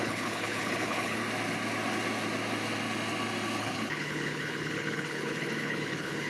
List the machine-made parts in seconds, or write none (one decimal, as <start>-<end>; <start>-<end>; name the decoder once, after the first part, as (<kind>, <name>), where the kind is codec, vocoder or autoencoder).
0.0-1.2 (codec, HILCodec); 3.6-6.3